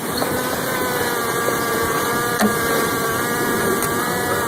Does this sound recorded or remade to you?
recorded